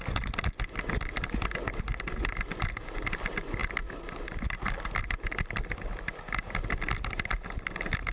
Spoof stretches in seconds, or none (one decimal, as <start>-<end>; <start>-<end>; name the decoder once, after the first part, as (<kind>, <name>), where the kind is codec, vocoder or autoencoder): none